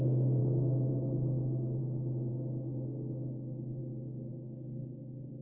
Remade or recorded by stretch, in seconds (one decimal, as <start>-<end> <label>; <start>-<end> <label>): 0.0-0.4 remade; 0.4-0.9 recorded; 0.9-3.8 remade; 3.8-4.3 recorded; 4.3-5.4 remade